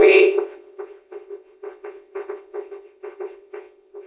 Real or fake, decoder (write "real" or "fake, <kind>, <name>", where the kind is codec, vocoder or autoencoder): fake, vocoder, WaveNeXt